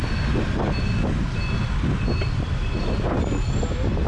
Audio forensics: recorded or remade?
recorded